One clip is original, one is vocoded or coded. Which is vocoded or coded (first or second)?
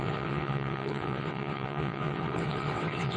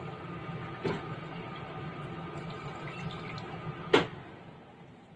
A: first